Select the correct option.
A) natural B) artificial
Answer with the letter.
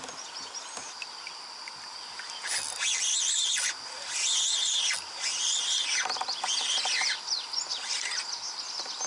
A